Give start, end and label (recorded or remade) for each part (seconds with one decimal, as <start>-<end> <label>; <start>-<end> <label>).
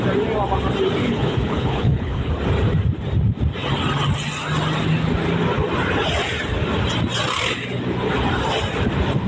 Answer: 0.0-1.0 recorded; 1.0-2.3 remade; 2.3-9.3 recorded